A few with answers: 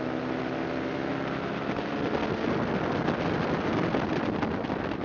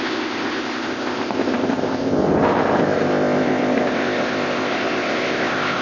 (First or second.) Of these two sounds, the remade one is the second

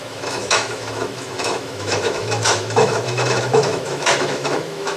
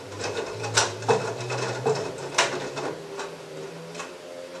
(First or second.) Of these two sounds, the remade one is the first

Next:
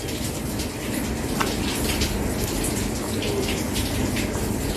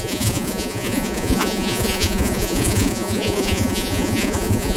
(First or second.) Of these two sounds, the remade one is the second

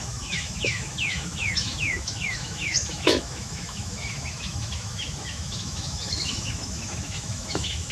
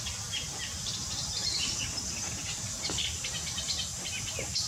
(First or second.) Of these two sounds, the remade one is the first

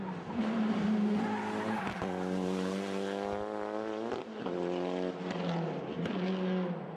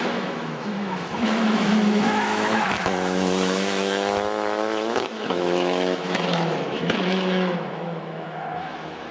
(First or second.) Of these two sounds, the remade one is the second